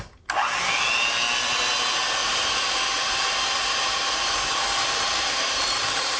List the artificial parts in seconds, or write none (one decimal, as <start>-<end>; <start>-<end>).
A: 2.2-6.2